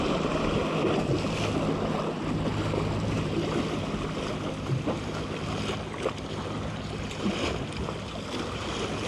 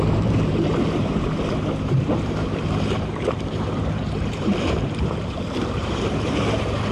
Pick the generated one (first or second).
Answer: second